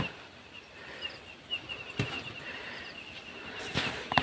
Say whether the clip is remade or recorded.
recorded